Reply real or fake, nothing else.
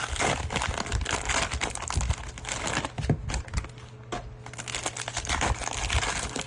real